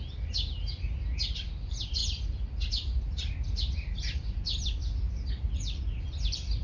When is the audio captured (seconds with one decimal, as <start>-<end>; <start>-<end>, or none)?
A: 0.0-6.6